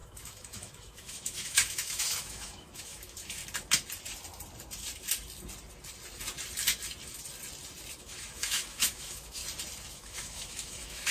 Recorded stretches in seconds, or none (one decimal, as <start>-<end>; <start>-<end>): 3.4-8.0; 9.4-9.9